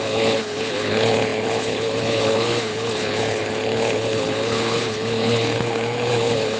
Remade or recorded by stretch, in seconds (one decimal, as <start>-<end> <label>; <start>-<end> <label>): 0.0-6.6 remade